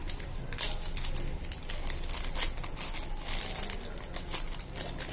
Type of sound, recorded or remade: recorded